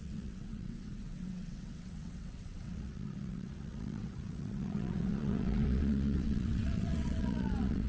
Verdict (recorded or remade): remade